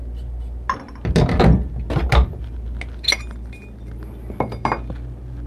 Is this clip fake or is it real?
real